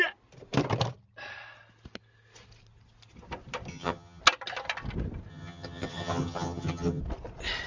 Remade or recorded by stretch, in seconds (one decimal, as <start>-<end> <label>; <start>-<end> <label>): 0.0-3.7 recorded; 3.7-4.2 remade; 4.2-5.3 recorded; 5.3-7.0 remade; 7.0-7.7 recorded